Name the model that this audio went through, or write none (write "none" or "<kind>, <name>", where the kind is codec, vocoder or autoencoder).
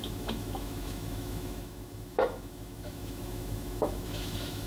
autoencoder, DAC-VAE